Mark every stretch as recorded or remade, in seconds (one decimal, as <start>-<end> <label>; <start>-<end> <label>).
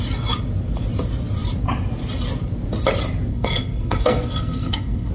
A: 0.0-3.3 recorded; 3.3-5.1 remade